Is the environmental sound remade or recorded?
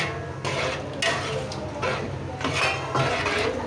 recorded